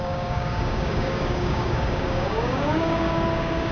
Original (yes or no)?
no